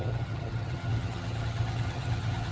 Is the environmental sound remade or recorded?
remade